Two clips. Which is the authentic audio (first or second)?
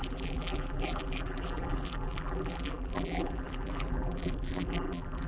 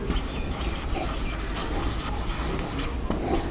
second